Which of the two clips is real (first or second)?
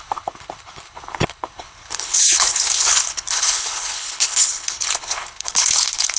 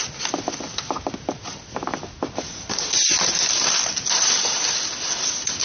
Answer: second